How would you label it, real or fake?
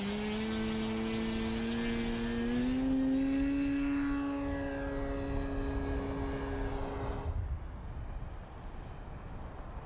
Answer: real